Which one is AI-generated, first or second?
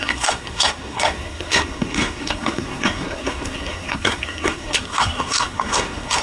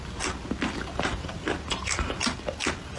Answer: first